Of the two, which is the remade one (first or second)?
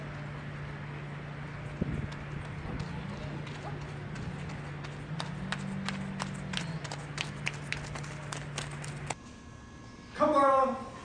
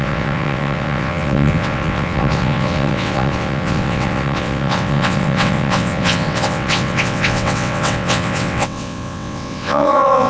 second